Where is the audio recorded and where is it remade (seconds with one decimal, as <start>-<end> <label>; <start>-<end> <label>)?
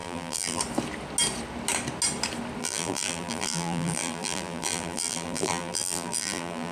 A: 0.0-0.6 remade; 0.6-2.6 recorded; 2.6-6.7 remade